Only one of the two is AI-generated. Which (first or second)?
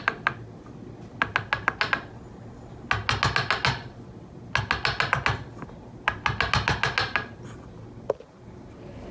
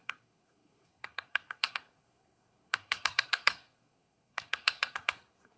second